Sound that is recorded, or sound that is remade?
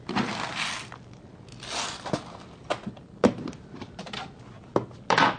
recorded